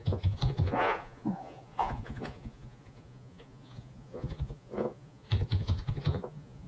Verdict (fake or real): fake